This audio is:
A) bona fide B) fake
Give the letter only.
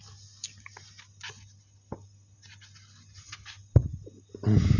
A